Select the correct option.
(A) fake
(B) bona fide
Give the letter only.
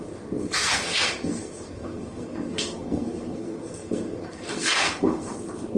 A